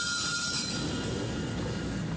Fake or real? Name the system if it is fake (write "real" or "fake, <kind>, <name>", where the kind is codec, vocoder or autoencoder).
real